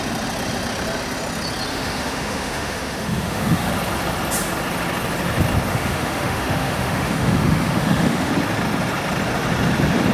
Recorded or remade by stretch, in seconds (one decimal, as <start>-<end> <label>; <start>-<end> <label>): 0.0-1.7 recorded; 1.7-3.7 remade; 3.7-5.7 recorded; 5.7-8.3 remade; 8.3-10.1 recorded